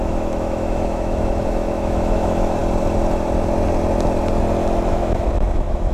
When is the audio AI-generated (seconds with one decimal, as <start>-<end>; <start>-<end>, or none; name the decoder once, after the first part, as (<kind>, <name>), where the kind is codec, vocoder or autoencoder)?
0.0-2.6 (autoencoder, DAC-VAE); 4.9-5.9